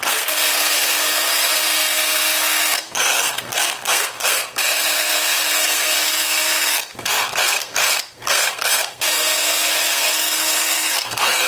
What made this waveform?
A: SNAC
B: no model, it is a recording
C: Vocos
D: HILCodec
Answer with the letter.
A